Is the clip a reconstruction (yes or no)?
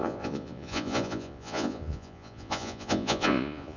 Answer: yes